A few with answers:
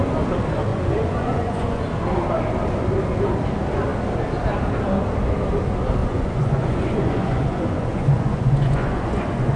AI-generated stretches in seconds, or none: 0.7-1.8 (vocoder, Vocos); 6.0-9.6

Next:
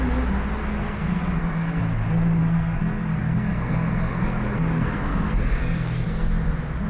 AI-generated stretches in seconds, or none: 0.8-1.8 (codec, SNAC); 2.4-6.3

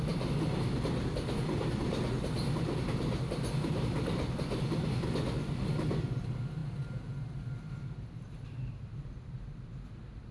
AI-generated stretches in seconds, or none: none

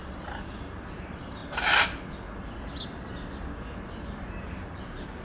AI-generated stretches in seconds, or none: 0.0-1.4 (vocoder, BigVGAN v2); 4.4-5.2